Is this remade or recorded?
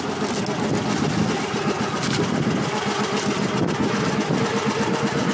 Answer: recorded